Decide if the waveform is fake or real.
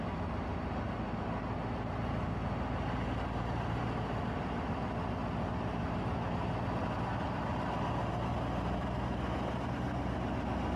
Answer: real